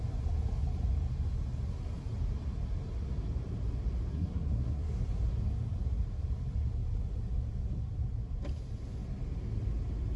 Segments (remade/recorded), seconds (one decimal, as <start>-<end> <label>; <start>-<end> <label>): 0.0-4.1 recorded; 4.1-5.0 remade; 5.0-10.2 recorded